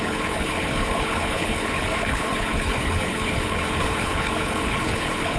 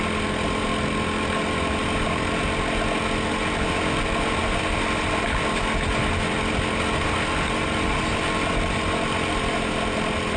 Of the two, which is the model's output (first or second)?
first